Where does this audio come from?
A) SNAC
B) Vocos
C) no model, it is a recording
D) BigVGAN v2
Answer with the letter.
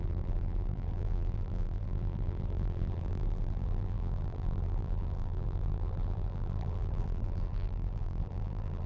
D